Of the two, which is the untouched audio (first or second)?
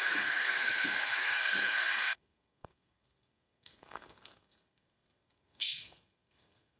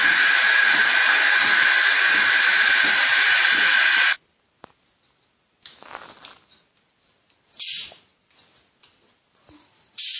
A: second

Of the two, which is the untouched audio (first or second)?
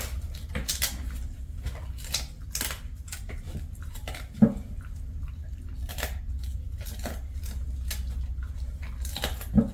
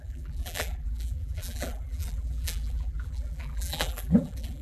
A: first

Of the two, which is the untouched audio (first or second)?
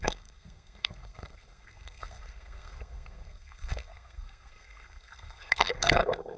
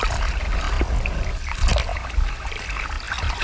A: second